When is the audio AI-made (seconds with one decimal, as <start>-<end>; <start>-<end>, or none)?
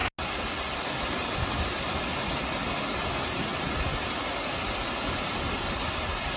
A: none